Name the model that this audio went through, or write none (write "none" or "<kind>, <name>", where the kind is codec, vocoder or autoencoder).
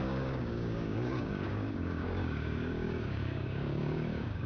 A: codec, DAC